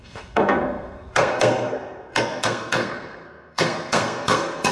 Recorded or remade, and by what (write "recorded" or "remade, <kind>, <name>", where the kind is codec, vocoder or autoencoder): remade, codec, SNAC